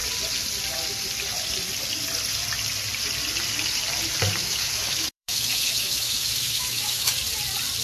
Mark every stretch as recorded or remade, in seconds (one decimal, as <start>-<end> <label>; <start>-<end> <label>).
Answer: 0.0-4.4 recorded; 4.4-7.1 remade; 7.1-7.8 recorded